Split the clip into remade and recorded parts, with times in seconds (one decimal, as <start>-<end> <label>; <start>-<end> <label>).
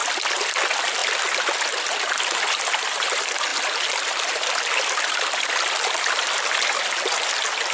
0.0-7.7 recorded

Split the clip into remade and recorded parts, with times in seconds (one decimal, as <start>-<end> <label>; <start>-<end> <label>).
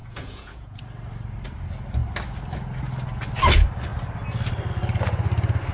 0.0-0.8 remade; 0.8-5.7 recorded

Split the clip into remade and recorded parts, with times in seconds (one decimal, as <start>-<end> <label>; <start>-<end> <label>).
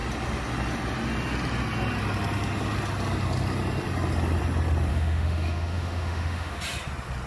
0.0-4.9 recorded; 4.9-6.6 remade; 6.6-7.3 recorded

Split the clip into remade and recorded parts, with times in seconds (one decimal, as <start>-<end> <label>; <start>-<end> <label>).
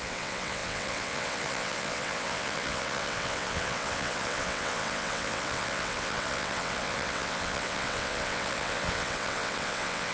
0.0-10.1 remade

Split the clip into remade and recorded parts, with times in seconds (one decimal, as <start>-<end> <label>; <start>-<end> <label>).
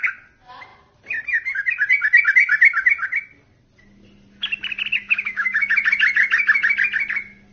0.0-5.0 recorded; 5.0-5.7 remade; 5.7-7.5 recorded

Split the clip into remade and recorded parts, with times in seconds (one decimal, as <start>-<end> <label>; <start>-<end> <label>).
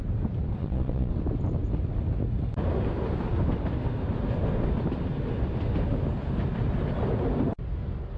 0.0-0.6 recorded; 0.6-1.1 remade; 1.1-8.2 recorded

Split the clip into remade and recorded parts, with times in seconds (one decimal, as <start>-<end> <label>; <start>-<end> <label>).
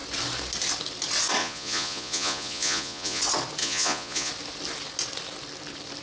0.0-1.4 recorded; 1.4-3.2 remade; 3.2-3.6 recorded; 3.6-4.3 remade; 4.3-6.0 recorded